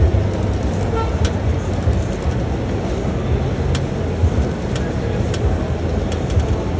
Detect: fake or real real